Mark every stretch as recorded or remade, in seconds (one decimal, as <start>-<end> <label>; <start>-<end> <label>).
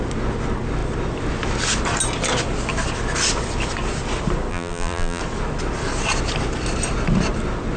0.0-4.5 recorded; 4.5-5.2 remade; 5.2-7.8 recorded